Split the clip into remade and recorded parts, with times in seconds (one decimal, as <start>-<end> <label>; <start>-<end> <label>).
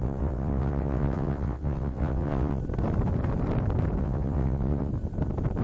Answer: 0.0-2.6 remade; 2.6-4.0 recorded; 4.0-4.9 remade; 4.9-5.6 recorded